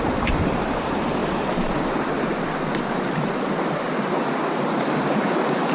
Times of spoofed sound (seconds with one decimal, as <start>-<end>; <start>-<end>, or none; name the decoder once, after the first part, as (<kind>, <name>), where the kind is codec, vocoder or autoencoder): 0.0-2.3 (vocoder, BigVGAN v2); 4.7-5.7